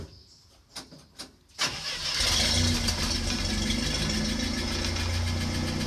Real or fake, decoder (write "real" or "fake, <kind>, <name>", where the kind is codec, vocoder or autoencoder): real